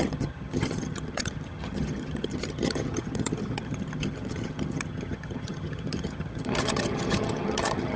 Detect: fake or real fake